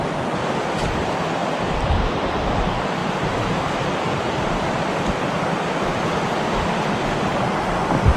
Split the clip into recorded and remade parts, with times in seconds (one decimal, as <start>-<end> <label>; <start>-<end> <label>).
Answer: 0.0-3.0 recorded; 3.0-3.7 remade; 3.7-5.9 recorded; 5.9-6.7 remade; 6.7-8.2 recorded